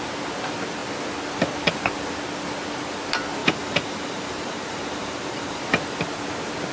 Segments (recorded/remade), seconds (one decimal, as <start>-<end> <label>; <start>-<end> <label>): 0.0-3.4 recorded; 3.4-5.6 remade; 5.6-6.7 recorded